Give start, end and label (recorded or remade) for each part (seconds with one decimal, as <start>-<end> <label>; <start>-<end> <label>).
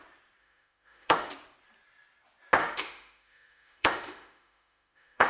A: 0.0-0.4 recorded; 0.4-1.3 remade; 1.3-2.6 recorded; 2.6-5.3 remade